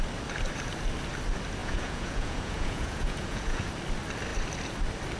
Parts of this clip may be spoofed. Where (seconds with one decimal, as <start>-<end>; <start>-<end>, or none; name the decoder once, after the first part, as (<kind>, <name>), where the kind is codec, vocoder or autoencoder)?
1.6-3.7 (vocoder, Vocos)